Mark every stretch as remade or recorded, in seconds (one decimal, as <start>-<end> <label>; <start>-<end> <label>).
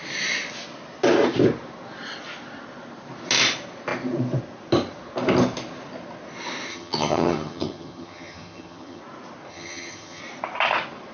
0.0-6.7 recorded; 6.7-9.0 remade; 9.0-9.5 recorded; 9.5-10.2 remade; 10.2-11.1 recorded